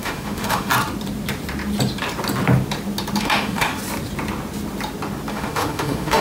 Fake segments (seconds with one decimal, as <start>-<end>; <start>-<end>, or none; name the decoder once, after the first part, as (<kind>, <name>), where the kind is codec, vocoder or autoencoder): 0.0-0.7 (autoencoder, DAC-VAE); 3.2-3.7; 5.3-6.2